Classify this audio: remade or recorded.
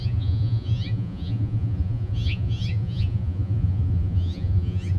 remade